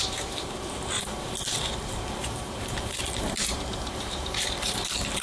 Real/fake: fake